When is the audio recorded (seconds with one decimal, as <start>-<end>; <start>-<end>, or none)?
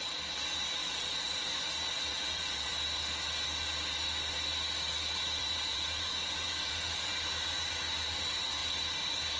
0.0-0.8; 1.5-2.1; 2.7-5.4; 7.0-9.4